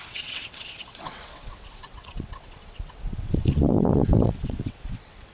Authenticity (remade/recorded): remade